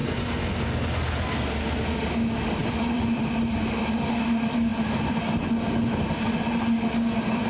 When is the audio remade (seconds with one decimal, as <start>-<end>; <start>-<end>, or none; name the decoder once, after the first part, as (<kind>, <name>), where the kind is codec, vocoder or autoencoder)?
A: 2.6-3.2 (vocoder, BigVGAN v2); 4.7-5.5